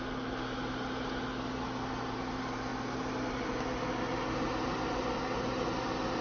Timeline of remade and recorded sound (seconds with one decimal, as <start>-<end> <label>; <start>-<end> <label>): 0.0-6.2 recorded